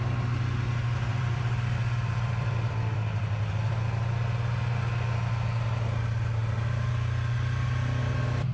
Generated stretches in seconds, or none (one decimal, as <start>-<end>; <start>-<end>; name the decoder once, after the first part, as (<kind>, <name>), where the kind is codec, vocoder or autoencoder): 1.1-3.7 (vocoder, BigVGAN v2)